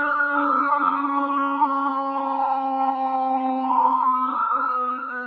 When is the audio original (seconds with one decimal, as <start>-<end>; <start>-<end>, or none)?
none